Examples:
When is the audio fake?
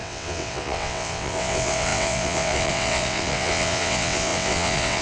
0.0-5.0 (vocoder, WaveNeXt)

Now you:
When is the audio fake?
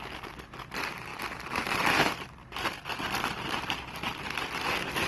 none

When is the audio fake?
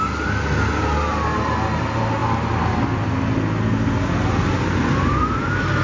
none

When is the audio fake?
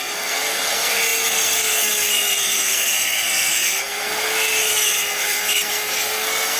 0.0-6.6 (codec, SNAC)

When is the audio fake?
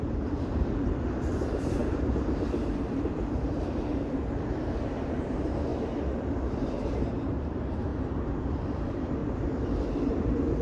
0.0-5.7 (vocoder, BigVGAN v2); 6.5-7.9; 8.6-9.2; 9.9-10.6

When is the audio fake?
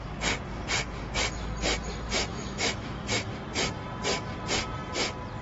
2.3-3.3 (autoencoder, DAC-VAE)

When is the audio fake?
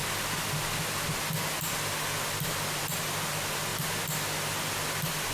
none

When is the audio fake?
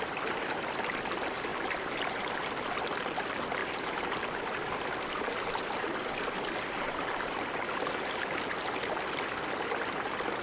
1.5-2.4 (vocoder, BigVGAN v2)